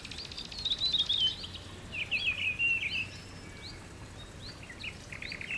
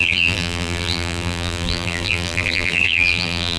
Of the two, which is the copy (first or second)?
second